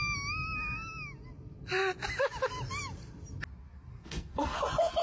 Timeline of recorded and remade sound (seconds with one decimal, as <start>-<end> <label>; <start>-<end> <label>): 0.0-3.9 recorded; 3.9-4.6 remade; 4.6-5.0 recorded

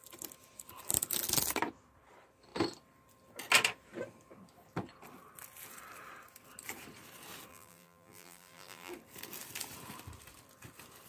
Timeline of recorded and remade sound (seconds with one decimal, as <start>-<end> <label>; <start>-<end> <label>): 0.0-7.5 recorded; 7.5-8.9 remade; 8.9-11.1 recorded

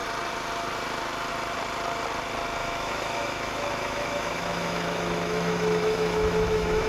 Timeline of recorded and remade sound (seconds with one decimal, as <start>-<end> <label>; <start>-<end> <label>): 0.0-2.6 recorded; 2.6-6.9 remade

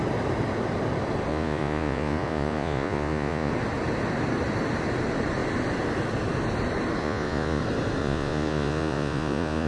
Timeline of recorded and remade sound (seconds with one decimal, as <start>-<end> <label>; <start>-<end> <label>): 0.0-1.3 recorded; 1.3-3.5 remade; 3.5-7.0 recorded; 7.0-7.6 remade; 7.6-8.0 recorded; 8.0-9.7 remade

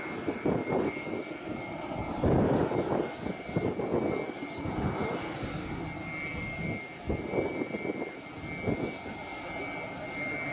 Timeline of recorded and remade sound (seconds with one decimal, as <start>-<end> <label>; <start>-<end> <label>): 0.0-0.6 recorded; 0.6-3.7 remade; 3.7-10.5 recorded